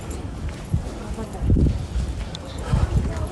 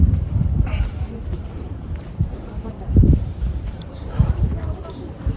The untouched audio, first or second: first